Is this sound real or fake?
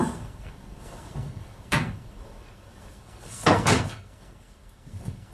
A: fake